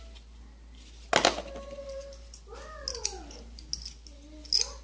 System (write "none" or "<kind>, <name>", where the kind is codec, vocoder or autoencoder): none